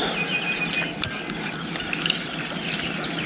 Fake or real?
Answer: real